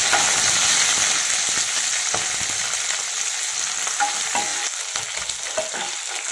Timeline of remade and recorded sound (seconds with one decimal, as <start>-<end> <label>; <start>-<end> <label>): 0.0-6.3 recorded